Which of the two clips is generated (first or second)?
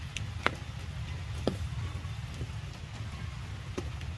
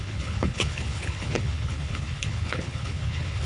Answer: second